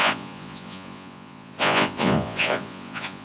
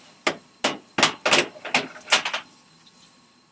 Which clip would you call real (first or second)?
second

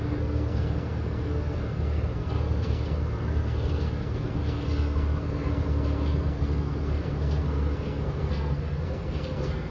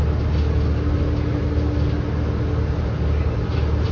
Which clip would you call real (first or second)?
second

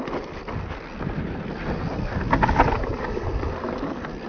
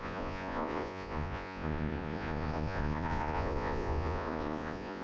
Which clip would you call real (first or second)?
first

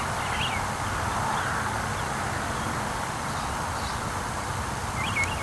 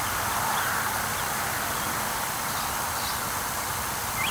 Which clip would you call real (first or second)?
first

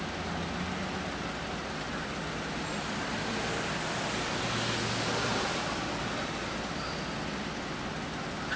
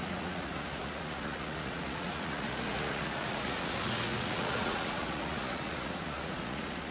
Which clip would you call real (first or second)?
first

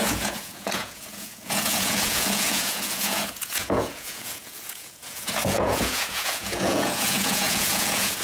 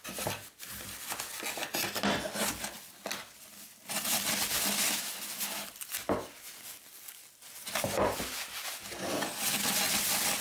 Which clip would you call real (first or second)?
second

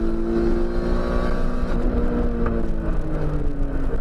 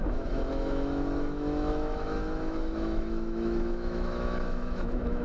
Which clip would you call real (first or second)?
first